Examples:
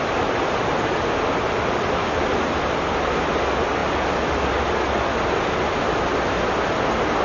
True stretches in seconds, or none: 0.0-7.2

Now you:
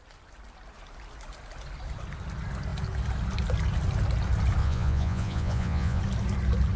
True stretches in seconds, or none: 0.0-4.6; 6.0-6.8

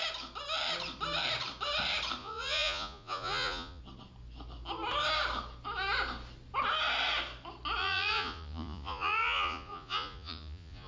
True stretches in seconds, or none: 0.0-2.2; 3.8-7.8

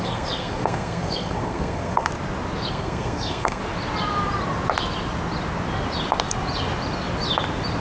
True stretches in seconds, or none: 2.1-2.7; 3.6-7.8

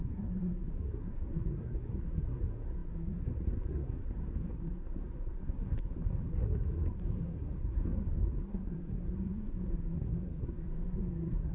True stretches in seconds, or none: none

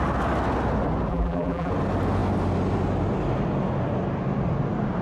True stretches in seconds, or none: 0.0-1.1; 1.7-5.0